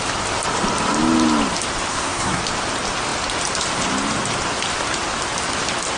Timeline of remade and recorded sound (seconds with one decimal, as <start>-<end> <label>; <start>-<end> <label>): 0.0-1.9 recorded; 1.9-2.4 remade; 2.4-6.0 recorded